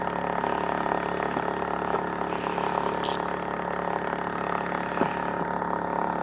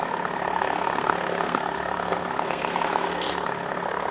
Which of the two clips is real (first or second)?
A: first